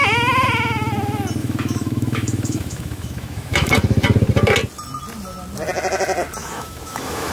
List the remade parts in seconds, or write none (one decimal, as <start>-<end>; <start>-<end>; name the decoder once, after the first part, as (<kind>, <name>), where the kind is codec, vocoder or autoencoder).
1.4-3.7 (autoencoder, DAC-VAE); 6.4-7.3